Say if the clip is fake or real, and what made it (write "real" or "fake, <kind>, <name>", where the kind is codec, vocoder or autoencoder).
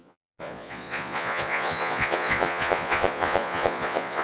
fake, vocoder, Vocos